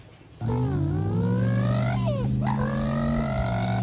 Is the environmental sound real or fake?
real